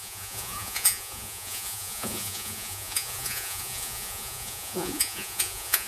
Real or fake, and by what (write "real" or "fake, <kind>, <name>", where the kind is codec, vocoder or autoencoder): fake, vocoder, Vocos